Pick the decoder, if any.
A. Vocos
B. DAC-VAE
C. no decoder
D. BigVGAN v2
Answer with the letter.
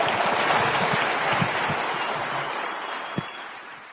C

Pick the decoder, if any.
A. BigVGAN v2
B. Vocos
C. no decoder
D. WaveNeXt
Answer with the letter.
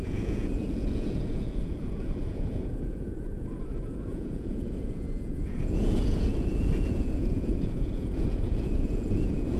B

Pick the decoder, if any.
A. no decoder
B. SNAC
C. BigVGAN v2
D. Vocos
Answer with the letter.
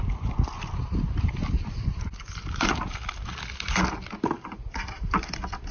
A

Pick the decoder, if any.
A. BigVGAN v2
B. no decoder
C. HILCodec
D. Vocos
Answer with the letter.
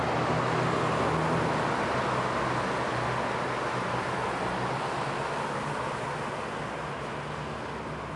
B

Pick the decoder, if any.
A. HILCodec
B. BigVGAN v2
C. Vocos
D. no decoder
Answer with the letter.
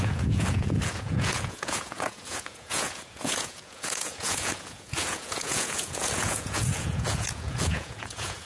C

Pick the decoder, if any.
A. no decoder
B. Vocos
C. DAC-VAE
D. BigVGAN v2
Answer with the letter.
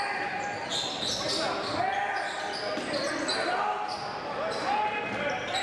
A